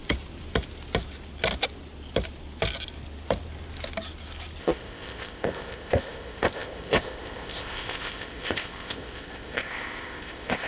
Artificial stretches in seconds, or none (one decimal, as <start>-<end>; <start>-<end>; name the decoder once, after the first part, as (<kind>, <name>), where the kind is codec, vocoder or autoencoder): 4.6-10.7 (codec, ZipCodec)